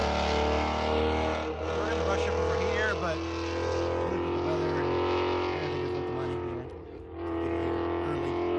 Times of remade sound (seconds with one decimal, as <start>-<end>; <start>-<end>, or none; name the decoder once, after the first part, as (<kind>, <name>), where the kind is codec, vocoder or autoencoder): none

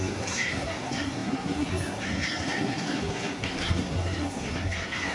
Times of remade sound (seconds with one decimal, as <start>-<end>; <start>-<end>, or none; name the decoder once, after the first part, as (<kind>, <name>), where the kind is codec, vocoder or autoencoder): 0.0-5.1 (codec, SNAC)

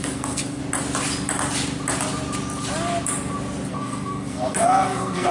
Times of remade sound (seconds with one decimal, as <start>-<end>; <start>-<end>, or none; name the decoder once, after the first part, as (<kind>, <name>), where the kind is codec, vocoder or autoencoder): 0.0-0.6 (codec, SNAC); 3.7-5.3